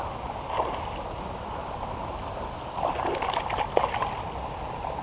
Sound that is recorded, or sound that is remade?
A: recorded